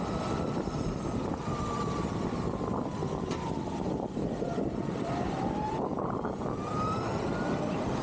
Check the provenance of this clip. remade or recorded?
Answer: remade